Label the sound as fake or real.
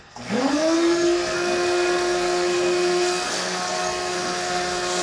fake